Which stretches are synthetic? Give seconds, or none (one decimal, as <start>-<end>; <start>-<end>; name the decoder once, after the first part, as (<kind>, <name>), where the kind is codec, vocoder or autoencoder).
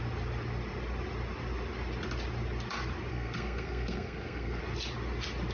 3.1-4.6 (codec, SNAC)